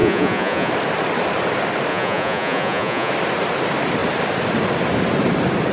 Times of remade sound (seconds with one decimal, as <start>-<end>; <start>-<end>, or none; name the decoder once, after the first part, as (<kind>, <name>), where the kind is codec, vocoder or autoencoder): 0.0-0.7 (vocoder, Vocos); 1.9-3.1